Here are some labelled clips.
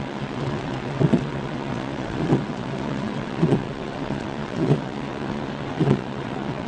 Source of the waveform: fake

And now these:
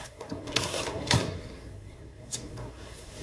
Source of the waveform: fake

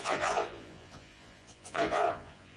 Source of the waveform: fake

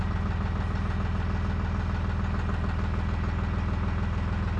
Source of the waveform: real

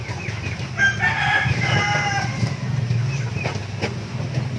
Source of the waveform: real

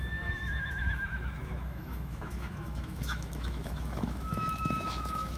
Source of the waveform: fake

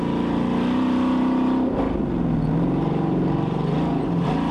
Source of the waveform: real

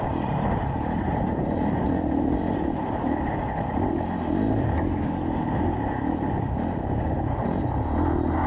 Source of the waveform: real